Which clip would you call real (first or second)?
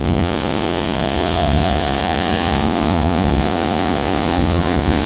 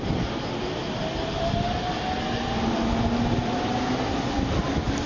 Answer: second